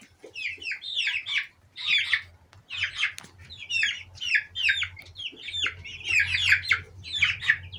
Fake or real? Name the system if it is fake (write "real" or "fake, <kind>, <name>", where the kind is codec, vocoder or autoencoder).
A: real